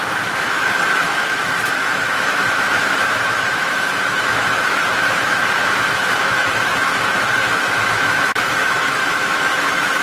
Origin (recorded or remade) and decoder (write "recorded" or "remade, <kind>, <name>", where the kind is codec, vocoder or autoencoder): remade, autoencoder, DAC-VAE